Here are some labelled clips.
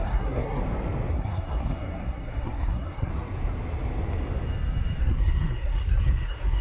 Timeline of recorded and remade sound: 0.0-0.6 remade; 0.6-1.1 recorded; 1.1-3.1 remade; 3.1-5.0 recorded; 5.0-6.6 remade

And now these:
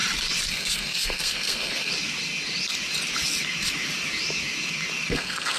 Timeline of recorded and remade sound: 0.0-0.5 recorded; 0.5-1.9 remade; 1.9-5.1 recorded; 5.1-5.6 remade

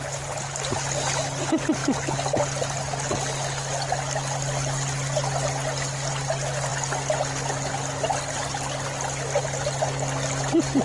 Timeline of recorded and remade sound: 0.0-10.8 recorded

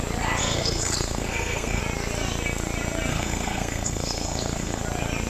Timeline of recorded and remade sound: 0.0-0.4 recorded; 0.4-1.8 remade; 1.8-3.1 recorded; 3.1-4.8 remade; 4.8-5.3 recorded

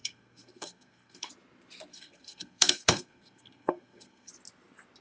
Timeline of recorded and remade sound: 0.0-1.3 remade; 1.3-1.9 recorded; 1.9-4.3 remade; 4.3-5.0 recorded

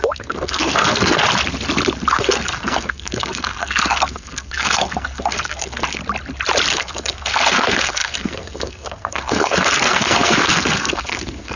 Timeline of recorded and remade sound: 0.0-1.2 remade; 1.2-2.1 recorded; 2.1-6.0 remade; 6.0-6.7 recorded; 6.7-11.6 remade

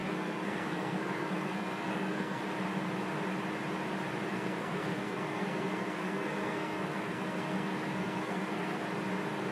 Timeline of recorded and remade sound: 0.0-2.4 remade; 2.4-4.3 recorded; 4.3-8.8 remade; 8.8-9.5 recorded

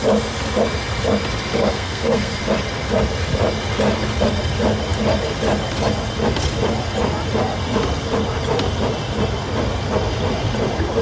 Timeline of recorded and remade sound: 0.0-1.5 recorded; 1.5-2.4 remade; 2.4-11.0 recorded